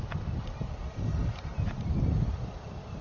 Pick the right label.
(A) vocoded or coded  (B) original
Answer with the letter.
B